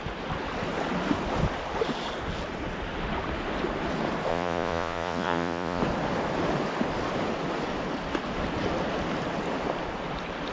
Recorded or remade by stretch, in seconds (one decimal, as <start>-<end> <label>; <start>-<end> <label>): 0.0-4.3 recorded; 4.3-5.8 remade; 5.8-10.5 recorded